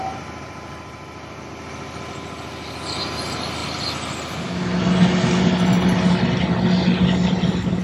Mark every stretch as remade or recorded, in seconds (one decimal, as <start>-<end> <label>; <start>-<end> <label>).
0.0-7.8 recorded